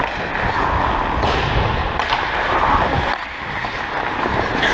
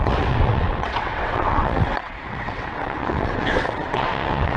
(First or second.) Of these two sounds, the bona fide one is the first